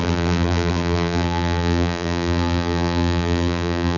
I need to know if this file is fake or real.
fake